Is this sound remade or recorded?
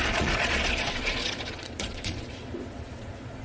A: remade